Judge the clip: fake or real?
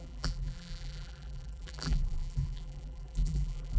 fake